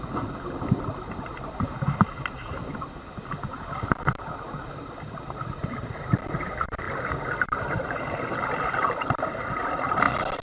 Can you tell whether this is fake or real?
real